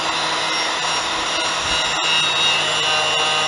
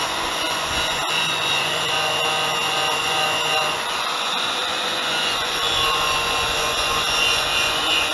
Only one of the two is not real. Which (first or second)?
second